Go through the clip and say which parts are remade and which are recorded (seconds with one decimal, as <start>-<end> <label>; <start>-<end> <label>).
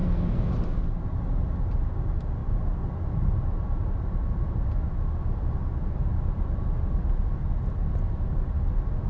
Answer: 0.0-0.5 remade; 0.5-9.1 recorded